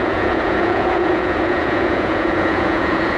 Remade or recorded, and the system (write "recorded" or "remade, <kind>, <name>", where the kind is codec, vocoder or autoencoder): remade, vocoder, Vocos